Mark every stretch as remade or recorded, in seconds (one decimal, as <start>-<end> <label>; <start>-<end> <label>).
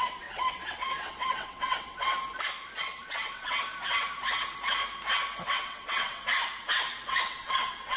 0.0-2.1 remade; 2.1-2.8 recorded; 2.8-3.7 remade; 3.7-5.5 recorded; 5.5-6.3 remade; 6.3-7.1 recorded; 7.1-8.0 remade